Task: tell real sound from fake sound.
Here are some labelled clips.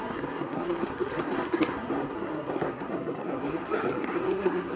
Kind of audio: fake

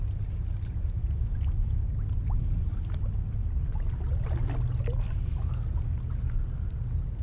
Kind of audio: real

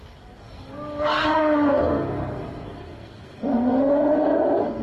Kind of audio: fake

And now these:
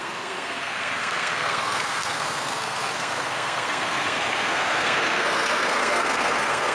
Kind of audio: fake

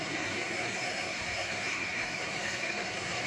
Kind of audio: fake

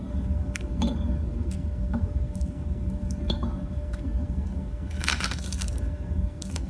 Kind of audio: fake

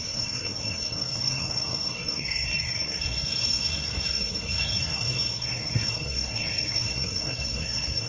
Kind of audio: fake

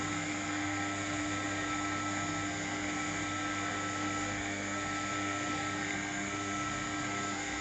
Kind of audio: fake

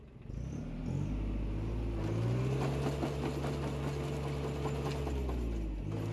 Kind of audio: real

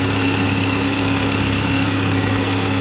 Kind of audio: fake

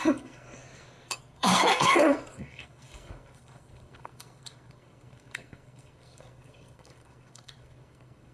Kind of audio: fake